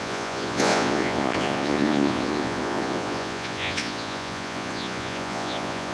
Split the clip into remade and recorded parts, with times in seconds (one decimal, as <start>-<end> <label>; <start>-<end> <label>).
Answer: 0.0-5.9 remade